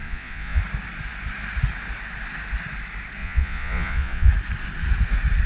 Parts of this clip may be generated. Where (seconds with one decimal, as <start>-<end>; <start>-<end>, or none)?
0.0-0.6; 3.2-4.3